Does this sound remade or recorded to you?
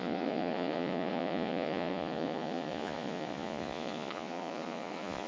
remade